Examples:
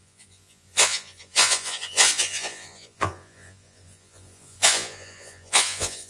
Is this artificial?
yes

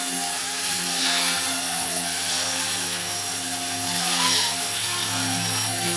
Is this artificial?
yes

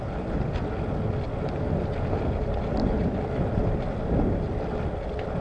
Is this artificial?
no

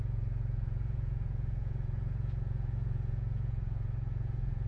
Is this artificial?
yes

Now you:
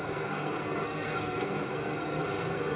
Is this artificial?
yes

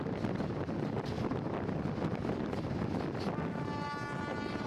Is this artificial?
no